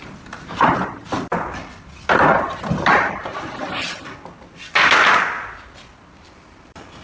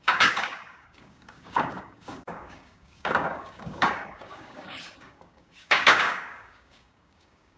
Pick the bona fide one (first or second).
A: first